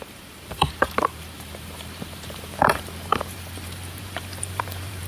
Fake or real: fake